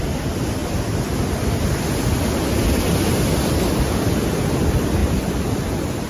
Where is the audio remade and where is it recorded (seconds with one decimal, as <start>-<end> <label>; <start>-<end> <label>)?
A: 0.0-6.1 recorded